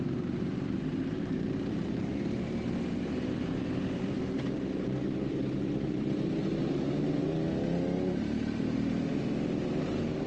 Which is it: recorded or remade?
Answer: remade